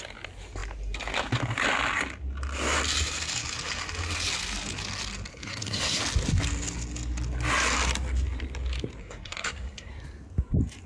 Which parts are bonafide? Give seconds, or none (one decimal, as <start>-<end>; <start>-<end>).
0.0-5.3; 6.0-9.0; 9.9-10.9